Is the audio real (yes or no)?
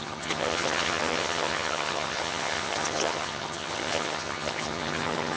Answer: no